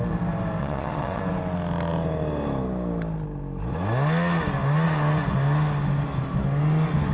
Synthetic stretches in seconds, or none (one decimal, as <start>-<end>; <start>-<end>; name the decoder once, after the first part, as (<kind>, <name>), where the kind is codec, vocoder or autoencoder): 0.6-1.2 (vocoder, Vocos)